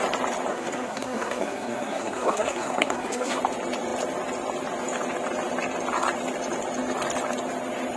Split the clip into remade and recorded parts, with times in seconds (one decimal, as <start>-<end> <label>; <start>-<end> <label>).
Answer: 0.0-0.5 recorded; 0.5-3.4 remade; 3.4-8.0 recorded